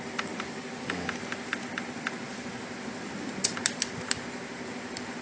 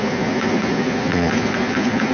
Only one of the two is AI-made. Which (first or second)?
second